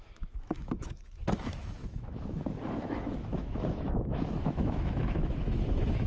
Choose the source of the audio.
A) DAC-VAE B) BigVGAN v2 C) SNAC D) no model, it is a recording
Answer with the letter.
A